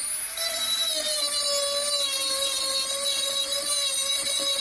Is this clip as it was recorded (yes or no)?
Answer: yes